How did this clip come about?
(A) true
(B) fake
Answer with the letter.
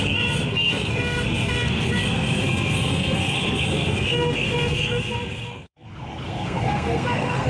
B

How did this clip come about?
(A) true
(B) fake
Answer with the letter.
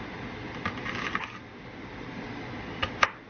A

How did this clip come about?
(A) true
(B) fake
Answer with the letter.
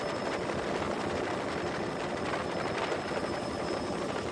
A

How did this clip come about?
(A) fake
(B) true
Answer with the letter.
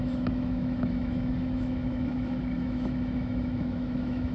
A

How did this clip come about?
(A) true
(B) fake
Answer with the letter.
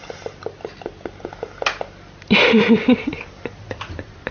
A